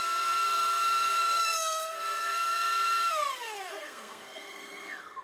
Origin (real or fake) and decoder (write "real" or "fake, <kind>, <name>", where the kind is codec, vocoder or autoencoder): fake, codec, SNAC